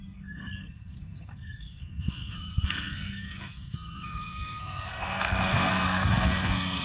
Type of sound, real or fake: fake